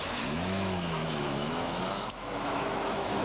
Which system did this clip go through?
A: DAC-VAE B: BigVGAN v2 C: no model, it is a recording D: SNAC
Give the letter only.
A